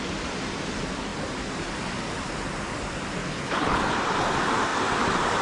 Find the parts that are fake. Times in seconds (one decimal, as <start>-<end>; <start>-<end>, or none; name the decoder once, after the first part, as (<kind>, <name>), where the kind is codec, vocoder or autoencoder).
3.2-3.8 (codec, HILCodec)